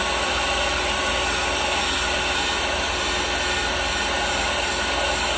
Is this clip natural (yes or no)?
yes